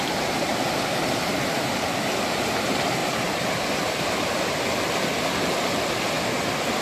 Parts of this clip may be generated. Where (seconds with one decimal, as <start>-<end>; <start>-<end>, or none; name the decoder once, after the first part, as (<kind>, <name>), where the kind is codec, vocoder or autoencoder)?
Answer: 3.0-4.3 (vocoder, BigVGAN v2)